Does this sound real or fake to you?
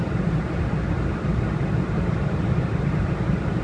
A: fake